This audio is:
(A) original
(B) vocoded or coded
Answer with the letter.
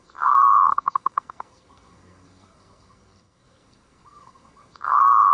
B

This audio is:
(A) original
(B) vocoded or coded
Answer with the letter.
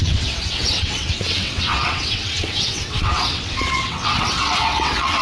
B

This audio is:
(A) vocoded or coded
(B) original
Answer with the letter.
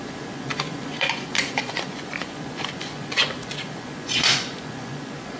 A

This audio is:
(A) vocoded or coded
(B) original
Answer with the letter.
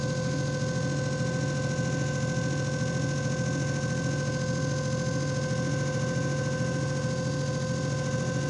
B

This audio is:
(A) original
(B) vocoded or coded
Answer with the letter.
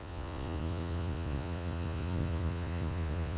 B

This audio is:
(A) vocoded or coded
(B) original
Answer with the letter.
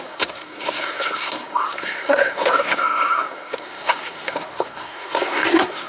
A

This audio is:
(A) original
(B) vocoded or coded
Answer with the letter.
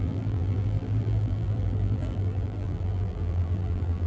B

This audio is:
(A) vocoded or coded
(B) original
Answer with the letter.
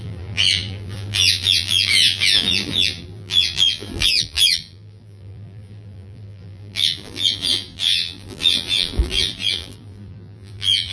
A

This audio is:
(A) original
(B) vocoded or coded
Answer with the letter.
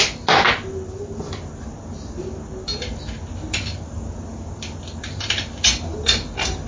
A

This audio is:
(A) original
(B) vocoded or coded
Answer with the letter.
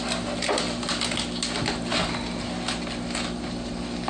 A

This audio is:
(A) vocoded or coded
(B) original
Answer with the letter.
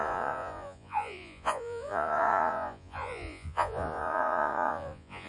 A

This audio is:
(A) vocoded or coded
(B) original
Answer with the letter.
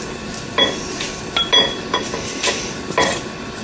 B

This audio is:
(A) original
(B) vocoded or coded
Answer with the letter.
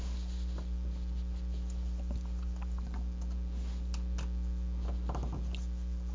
A